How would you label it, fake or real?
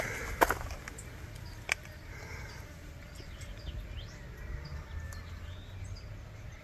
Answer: real